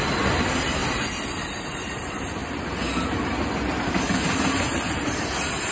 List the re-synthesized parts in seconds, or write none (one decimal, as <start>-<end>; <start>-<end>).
0.0-0.8; 1.6-2.4; 3.4-5.7